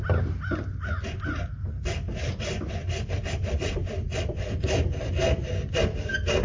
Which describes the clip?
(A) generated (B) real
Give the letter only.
B